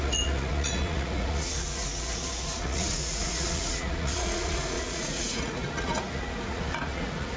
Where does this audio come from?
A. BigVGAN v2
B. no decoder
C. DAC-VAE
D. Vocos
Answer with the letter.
D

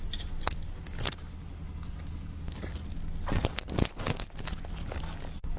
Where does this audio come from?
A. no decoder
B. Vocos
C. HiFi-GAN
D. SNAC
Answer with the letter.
A